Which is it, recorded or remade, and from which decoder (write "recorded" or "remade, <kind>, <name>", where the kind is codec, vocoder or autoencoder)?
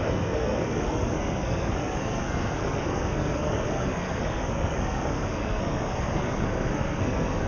remade, codec, SNAC